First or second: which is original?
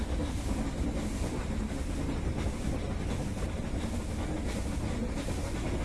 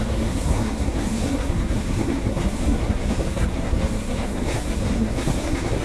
first